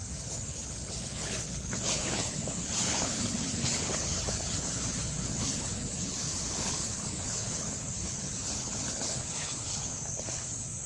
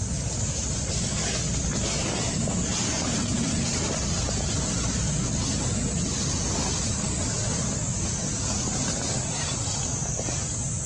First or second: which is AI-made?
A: first